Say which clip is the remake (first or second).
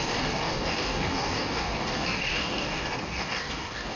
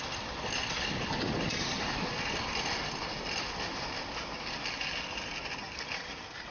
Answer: first